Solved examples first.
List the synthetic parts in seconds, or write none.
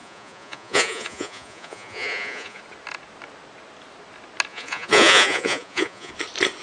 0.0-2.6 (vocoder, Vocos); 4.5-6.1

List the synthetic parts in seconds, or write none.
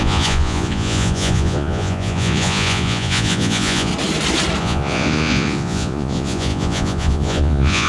0.0-3.9 (vocoder, Vocos); 4.6-7.9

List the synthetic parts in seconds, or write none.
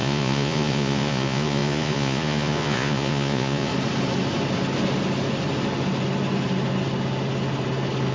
0.0-3.7 (vocoder, Vocos)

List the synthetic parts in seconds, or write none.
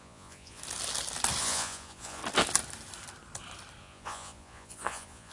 0.0-0.6 (vocoder, Vocos); 1.4-2.2; 3.8-5.3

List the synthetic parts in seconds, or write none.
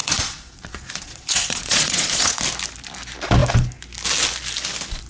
0.0-2.4 (vocoder, Vocos)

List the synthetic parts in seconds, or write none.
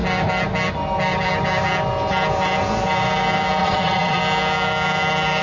3.6-4.2 (vocoder, Vocos)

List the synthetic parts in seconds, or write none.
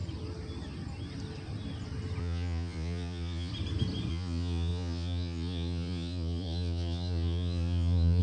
2.2-3.5 (vocoder, Vocos); 4.1-8.2